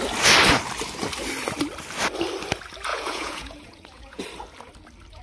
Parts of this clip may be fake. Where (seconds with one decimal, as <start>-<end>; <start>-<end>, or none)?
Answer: 2.9-4.2